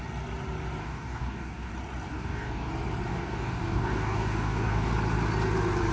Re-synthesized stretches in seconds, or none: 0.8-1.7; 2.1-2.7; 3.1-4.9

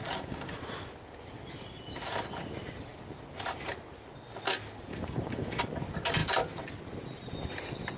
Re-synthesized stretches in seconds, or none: 0.0-0.6; 4.9-5.6

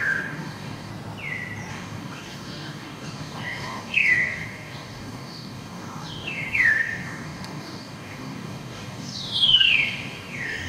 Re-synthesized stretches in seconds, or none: 0.0-0.9; 1.7-10.7

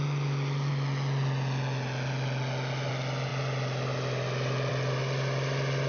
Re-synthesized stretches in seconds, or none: none

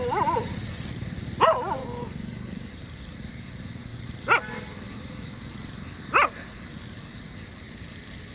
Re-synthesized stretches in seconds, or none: 1.8-2.7

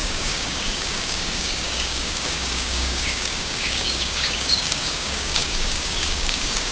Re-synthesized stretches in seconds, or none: 0.0-6.7

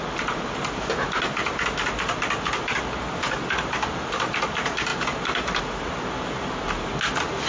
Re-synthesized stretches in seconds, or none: none

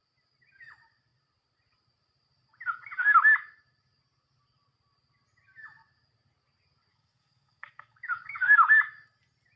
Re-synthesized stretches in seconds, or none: 6.9-8.7